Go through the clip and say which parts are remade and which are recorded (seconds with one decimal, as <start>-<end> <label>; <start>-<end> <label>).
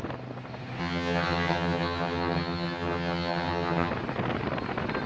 0.0-0.8 recorded; 0.8-3.9 remade; 3.9-5.1 recorded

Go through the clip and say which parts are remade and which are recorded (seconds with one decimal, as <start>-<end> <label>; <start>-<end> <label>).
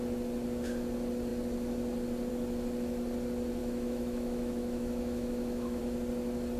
0.0-3.6 recorded; 3.6-5.8 remade; 5.8-6.6 recorded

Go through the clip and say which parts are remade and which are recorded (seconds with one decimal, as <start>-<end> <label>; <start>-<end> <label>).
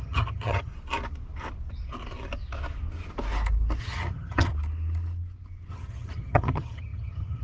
0.0-0.7 remade; 0.7-3.8 recorded; 3.8-4.5 remade; 4.5-5.7 recorded; 5.7-7.4 remade